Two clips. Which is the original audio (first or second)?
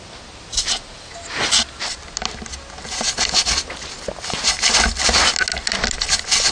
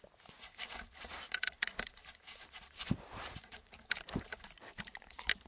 first